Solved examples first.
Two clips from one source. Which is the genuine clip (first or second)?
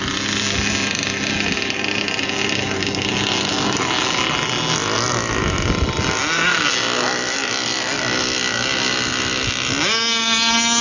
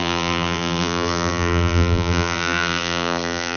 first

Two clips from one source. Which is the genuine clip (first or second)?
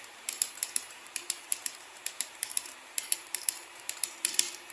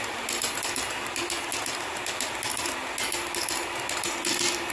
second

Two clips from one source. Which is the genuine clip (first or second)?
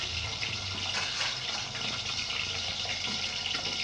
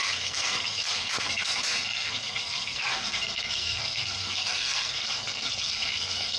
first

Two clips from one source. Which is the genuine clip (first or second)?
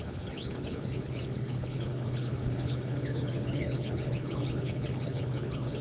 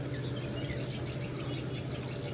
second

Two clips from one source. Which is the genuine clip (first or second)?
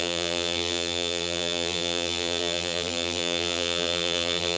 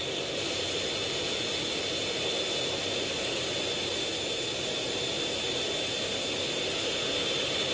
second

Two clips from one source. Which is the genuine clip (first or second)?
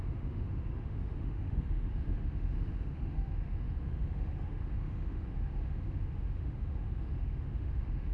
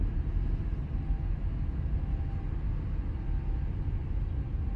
second